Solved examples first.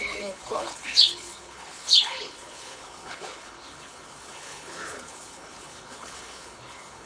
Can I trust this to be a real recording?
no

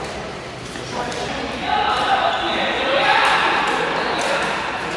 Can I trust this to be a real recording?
yes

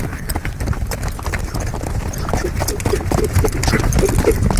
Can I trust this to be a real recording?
no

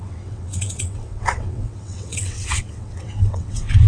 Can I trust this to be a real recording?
no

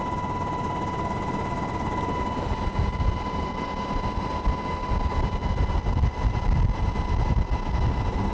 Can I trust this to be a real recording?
yes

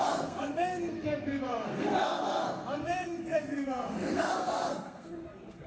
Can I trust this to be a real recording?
no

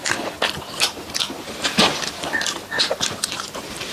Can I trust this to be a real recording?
yes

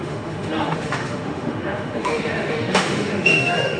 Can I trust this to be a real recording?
no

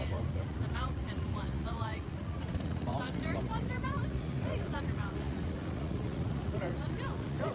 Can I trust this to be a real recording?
no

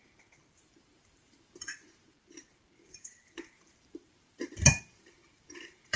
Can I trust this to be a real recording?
no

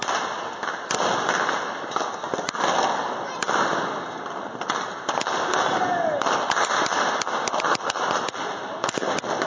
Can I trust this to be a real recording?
yes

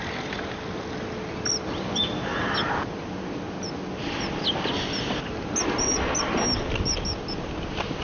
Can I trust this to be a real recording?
yes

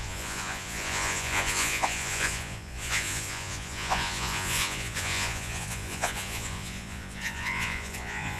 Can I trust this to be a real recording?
no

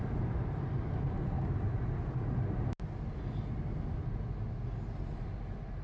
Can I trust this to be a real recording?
yes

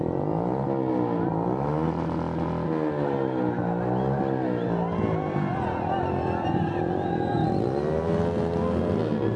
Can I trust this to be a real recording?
yes